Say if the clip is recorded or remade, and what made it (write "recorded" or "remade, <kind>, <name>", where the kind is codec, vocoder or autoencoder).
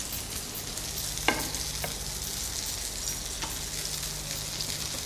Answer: recorded